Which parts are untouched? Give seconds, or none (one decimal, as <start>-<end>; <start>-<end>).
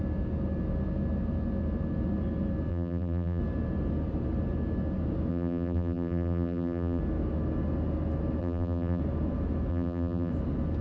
0.0-2.7; 3.4-5.3; 7.0-8.4; 9.0-9.7; 10.3-10.8